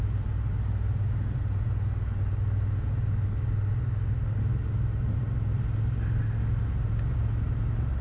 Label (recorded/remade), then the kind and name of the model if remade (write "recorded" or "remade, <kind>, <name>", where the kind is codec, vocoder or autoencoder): recorded